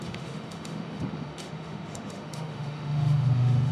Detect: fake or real fake